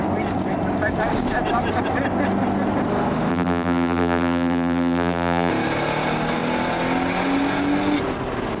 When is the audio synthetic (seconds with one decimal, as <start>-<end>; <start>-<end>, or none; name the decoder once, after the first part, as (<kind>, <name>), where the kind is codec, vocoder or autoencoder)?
3.3-5.5 (vocoder, BigVGAN v2)